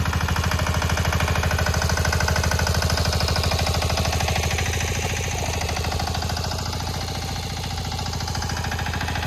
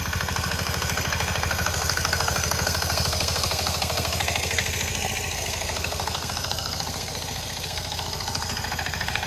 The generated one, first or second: second